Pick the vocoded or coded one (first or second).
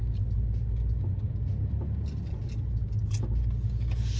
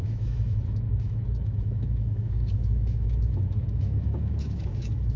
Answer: second